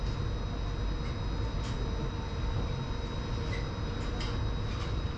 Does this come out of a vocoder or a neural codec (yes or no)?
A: no